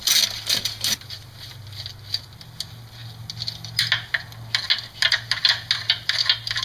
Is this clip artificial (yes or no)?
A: no